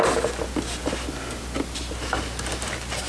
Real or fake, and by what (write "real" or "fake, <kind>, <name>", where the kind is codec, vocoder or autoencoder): real